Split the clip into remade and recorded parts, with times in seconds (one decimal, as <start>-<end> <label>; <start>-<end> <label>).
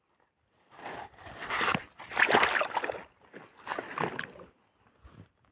0.0-5.5 recorded